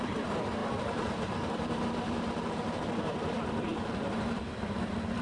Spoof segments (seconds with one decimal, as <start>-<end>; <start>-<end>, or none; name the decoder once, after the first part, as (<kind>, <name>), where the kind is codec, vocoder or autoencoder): 0.0-5.2 (vocoder, BigVGAN v2)